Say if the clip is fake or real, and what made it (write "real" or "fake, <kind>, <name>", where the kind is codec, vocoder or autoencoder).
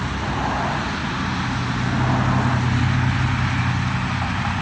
real